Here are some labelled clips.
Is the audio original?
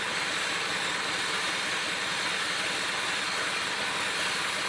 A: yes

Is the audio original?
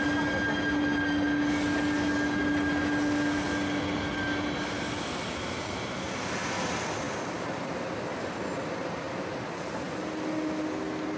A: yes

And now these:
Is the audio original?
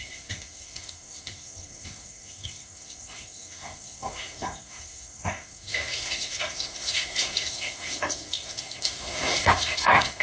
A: no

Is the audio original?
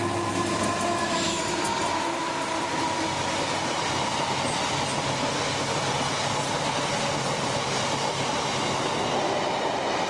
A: yes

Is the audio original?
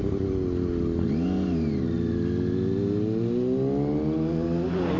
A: yes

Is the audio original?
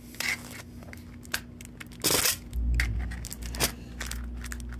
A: yes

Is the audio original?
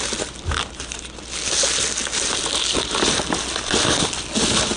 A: yes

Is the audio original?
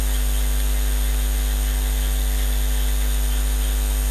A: yes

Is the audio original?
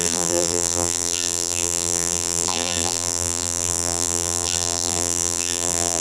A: no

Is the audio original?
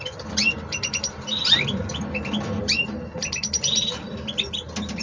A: no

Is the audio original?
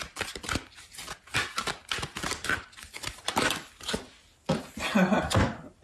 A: yes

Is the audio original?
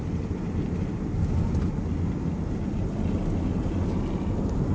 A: yes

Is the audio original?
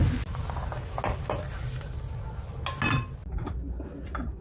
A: yes